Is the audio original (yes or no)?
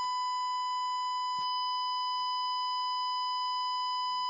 yes